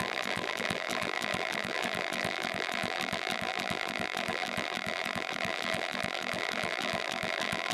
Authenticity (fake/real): fake